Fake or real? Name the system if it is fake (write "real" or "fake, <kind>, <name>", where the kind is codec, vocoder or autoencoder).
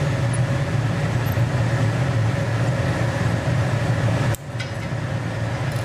real